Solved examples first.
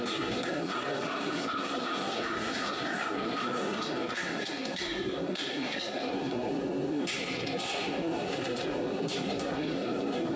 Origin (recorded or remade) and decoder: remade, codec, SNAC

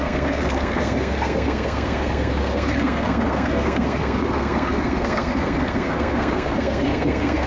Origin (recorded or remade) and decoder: remade, codec, SNAC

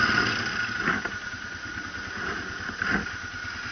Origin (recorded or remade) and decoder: recorded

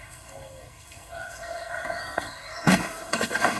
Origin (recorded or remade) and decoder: remade, codec, SNAC